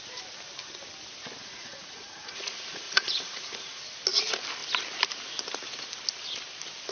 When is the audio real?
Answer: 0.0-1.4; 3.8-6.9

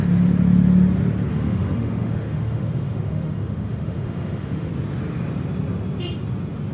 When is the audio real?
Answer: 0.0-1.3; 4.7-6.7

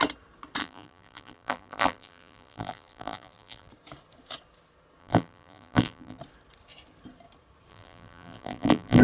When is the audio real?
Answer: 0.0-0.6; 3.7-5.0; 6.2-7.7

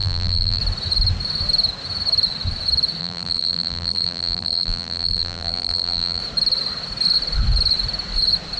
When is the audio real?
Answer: 0.6-3.0; 6.2-8.6

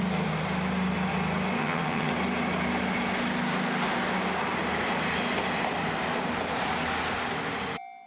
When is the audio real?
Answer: 0.0-1.6; 2.1-8.1

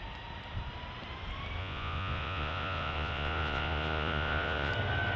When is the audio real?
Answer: 0.0-1.6; 4.7-5.2